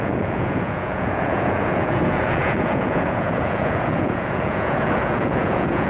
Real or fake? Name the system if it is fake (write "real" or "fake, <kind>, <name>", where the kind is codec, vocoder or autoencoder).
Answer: fake, vocoder, Vocos